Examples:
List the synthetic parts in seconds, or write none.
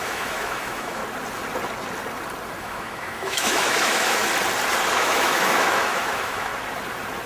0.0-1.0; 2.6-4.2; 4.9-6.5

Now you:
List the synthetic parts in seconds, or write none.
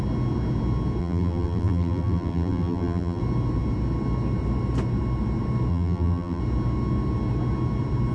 1.0-3.2; 5.7-6.4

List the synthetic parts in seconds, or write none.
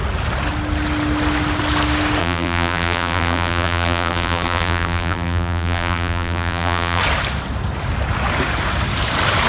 2.2-7.0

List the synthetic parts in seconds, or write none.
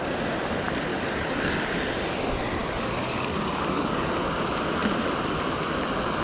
0.9-1.8; 2.6-4.1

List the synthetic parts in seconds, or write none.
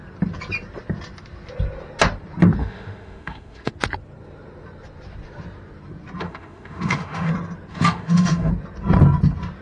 2.6-3.7; 6.2-7.3; 7.7-8.5